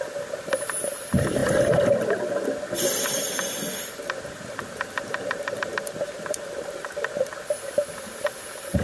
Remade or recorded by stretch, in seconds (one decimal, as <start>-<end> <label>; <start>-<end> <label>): 0.0-1.4 remade; 1.4-2.8 recorded; 2.8-8.8 remade